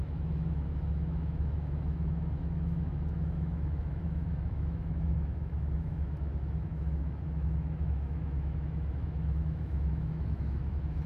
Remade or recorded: remade